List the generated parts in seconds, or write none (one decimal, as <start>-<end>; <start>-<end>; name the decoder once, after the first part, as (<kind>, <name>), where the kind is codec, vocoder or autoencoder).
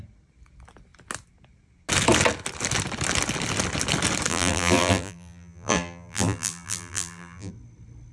4.3-7.5 (vocoder, BigVGAN v2)